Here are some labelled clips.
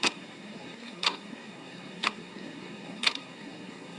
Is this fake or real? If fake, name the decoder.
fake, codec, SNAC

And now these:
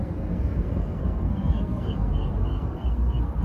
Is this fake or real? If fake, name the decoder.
fake, codec, SNAC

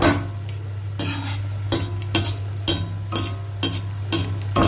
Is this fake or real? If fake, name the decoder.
real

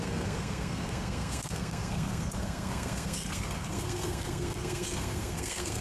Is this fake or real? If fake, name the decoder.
fake, codec, SNAC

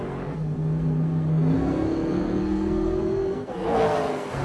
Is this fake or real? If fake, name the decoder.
fake, codec, SNAC